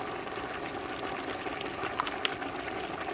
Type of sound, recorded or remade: recorded